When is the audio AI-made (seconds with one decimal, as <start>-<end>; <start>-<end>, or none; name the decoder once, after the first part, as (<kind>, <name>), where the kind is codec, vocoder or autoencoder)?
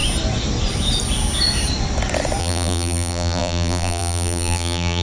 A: 2.4-5.0 (vocoder, BigVGAN v2)